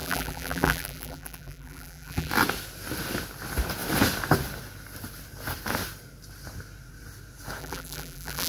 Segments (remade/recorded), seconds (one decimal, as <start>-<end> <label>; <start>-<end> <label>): 0.0-2.3 remade; 2.3-7.6 recorded; 7.6-8.5 remade